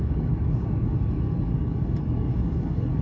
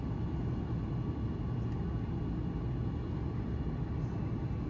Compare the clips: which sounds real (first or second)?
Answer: second